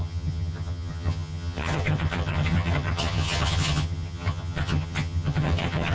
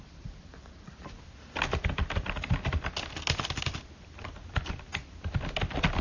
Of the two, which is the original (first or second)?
second